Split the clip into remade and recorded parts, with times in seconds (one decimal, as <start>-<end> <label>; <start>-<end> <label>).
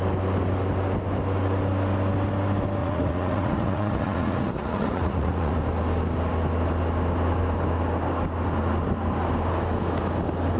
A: 0.0-2.8 recorded; 2.8-5.6 remade; 5.6-10.6 recorded